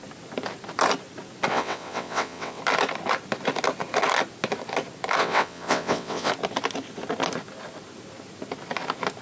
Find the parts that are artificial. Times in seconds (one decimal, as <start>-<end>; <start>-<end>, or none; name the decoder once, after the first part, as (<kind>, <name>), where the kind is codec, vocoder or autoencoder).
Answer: 1.5-2.6 (vocoder, WaveNeXt); 5.2-6.3